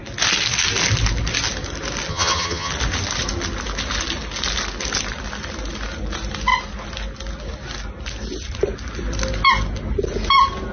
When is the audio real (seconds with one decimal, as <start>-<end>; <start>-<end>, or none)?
0.0-2.1; 2.7-10.7